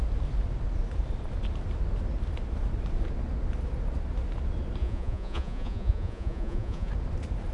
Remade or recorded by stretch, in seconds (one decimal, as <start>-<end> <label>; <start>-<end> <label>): 0.0-4.8 recorded; 4.8-6.9 remade; 6.9-7.5 recorded